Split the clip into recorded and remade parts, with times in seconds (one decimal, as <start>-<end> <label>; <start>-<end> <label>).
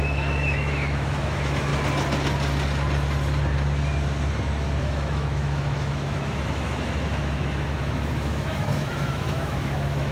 0.0-1.7 remade; 1.7-4.8 recorded; 4.8-10.1 remade